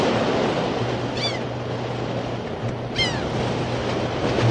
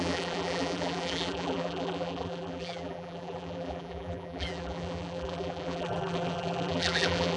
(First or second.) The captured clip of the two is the first